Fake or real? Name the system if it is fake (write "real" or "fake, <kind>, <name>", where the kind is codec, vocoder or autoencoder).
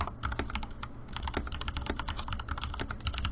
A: real